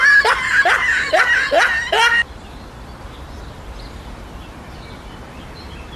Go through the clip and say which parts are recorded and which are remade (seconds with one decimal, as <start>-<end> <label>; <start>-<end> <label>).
0.0-6.0 recorded